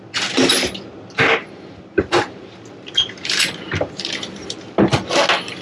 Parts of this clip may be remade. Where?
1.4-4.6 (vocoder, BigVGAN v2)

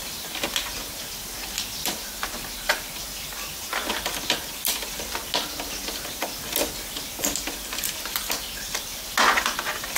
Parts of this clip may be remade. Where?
none

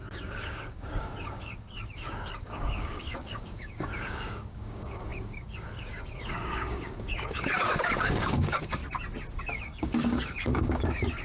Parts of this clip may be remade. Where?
0.0-8.8 (codec, DAC); 9.4-11.2

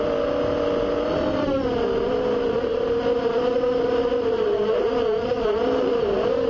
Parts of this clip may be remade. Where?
none

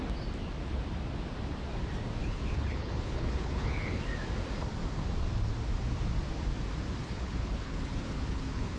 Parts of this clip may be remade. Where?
2.2-4.0 (codec, HILCodec); 7.0-8.8

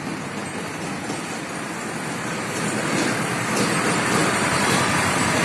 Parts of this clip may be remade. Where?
4.2-5.4 (vocoder, BigVGAN v2)

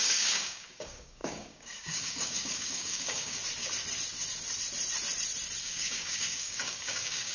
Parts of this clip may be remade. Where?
0.0-3.4 (codec, DAC); 5.6-7.3